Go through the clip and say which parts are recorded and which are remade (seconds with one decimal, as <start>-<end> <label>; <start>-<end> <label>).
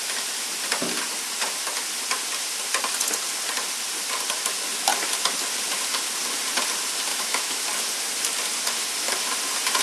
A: 0.0-7.1 recorded; 7.1-7.6 remade; 7.6-9.8 recorded